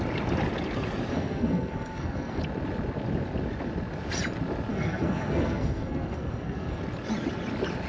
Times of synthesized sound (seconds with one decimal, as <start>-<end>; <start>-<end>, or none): 1.1-2.4; 4.7-6.8